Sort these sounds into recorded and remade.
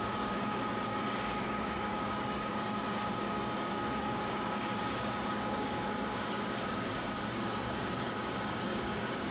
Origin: remade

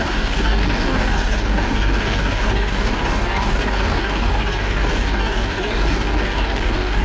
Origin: remade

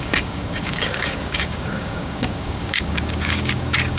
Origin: remade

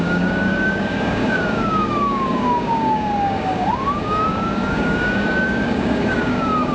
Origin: remade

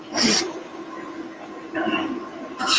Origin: recorded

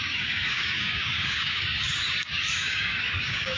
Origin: remade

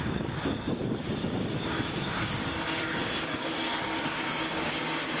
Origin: remade